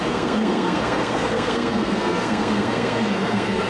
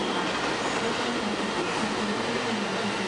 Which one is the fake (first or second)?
first